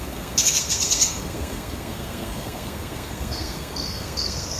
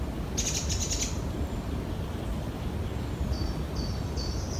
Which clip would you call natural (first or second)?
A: second